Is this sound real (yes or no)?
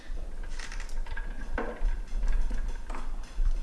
no